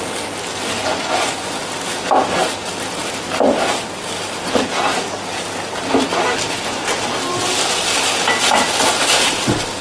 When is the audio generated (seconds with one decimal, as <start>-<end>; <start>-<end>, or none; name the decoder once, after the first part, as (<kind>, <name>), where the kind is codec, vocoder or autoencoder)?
0.8-1.6 (vocoder, Vocos)